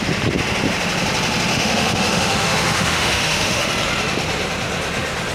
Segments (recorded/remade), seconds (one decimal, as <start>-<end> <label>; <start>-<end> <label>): 0.0-1.5 recorded; 1.5-3.7 remade; 3.7-5.3 recorded